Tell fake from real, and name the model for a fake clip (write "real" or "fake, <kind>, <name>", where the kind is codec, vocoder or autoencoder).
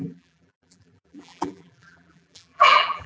fake, vocoder, BigVGAN v2